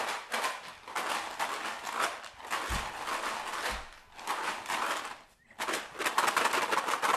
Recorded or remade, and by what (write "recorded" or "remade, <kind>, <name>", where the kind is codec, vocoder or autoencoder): recorded